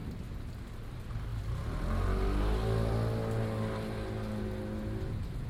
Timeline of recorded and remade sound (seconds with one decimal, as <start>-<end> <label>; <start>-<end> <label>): 0.0-5.5 recorded